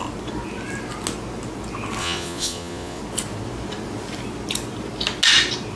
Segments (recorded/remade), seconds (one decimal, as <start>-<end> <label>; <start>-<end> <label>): 0.0-2.0 recorded; 2.0-3.0 remade; 3.0-5.8 recorded